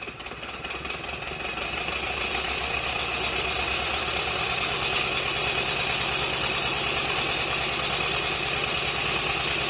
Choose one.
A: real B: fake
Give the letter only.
A